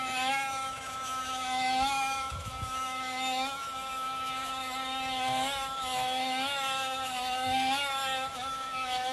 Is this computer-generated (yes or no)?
yes